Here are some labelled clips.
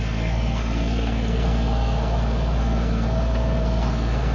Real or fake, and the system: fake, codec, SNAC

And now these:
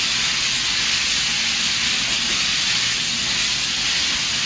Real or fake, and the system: real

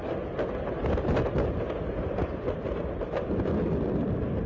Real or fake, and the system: real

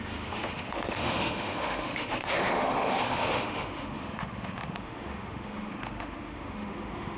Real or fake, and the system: fake, autoencoder, DAC-VAE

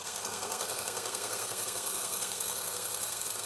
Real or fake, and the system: fake, codec, SNAC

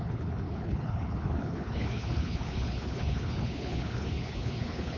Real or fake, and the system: fake, codec, HILCodec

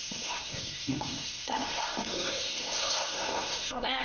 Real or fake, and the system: fake, codec, SNAC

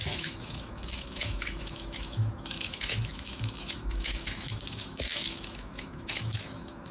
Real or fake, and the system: fake, autoencoder, DAC-VAE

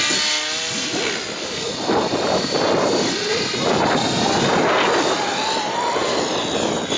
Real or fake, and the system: real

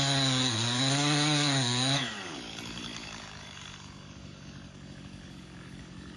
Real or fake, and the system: fake, codec, DAC